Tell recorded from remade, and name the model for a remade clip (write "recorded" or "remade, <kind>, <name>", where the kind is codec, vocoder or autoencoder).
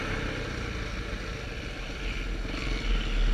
recorded